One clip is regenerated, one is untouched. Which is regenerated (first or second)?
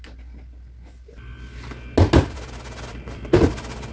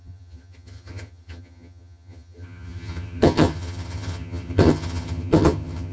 second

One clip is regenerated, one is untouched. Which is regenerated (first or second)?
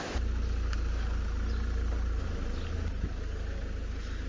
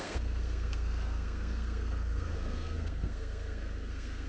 second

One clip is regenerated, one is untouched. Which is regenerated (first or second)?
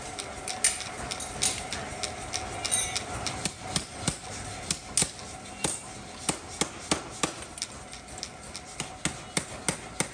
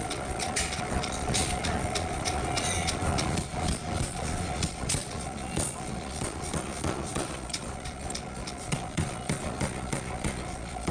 second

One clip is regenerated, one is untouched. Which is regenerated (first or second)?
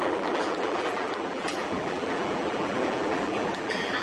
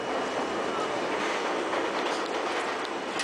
first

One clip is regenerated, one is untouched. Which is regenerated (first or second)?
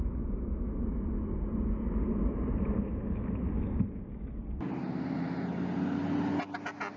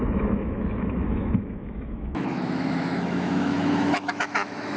second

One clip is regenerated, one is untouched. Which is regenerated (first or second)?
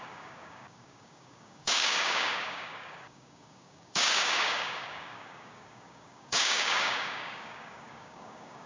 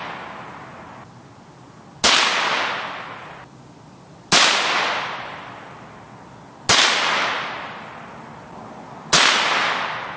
first